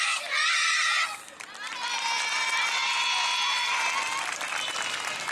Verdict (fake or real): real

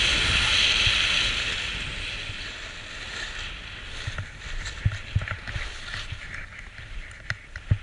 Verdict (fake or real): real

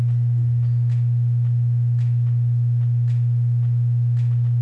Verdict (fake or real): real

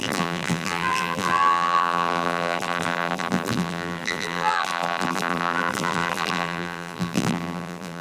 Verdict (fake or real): fake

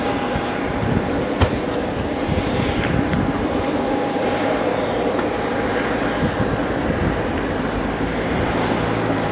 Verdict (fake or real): fake